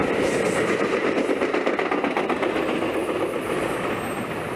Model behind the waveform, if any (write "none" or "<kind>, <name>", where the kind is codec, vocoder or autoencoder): none